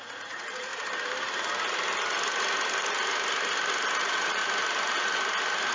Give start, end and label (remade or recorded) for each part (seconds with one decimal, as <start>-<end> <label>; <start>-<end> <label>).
0.0-0.7 remade; 0.7-4.0 recorded; 4.0-4.4 remade; 4.4-5.7 recorded